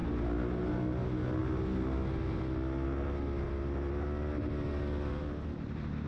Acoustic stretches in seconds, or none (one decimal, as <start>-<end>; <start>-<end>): 0.0-6.1